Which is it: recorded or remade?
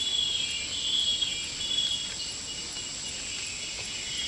recorded